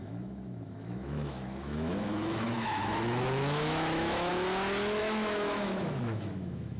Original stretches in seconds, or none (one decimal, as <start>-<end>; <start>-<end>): 4.3-5.0